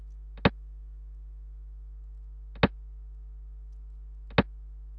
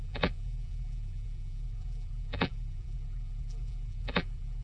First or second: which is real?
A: first